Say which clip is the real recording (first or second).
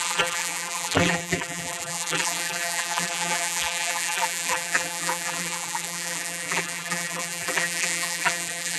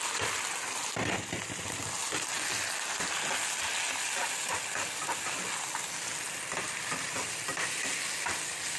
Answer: second